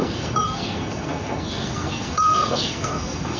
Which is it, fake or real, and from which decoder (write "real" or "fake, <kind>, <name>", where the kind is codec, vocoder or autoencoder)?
fake, codec, SNAC